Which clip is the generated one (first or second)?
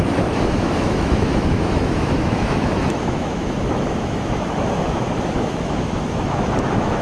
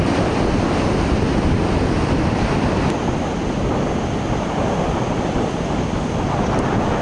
first